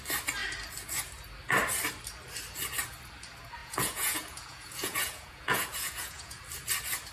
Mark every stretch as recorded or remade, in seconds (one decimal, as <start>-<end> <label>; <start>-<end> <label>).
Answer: 0.0-3.6 recorded; 3.6-6.4 remade; 6.4-7.1 recorded